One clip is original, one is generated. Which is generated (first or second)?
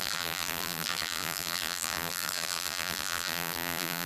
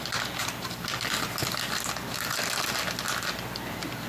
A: first